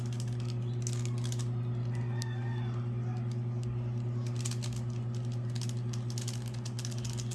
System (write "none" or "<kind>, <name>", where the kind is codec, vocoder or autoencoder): none